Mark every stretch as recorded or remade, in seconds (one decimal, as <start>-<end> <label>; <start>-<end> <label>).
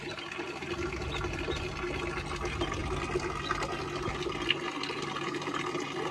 0.0-6.1 recorded